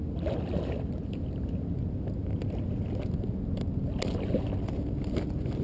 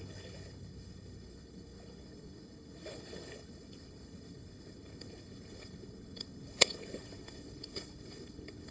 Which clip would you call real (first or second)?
first